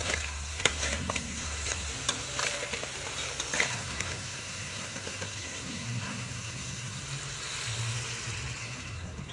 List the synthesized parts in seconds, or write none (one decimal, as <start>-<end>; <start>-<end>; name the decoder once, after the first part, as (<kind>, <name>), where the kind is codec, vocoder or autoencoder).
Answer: 0.0-1.9 (codec, SNAC); 3.7-7.0; 8.6-9.3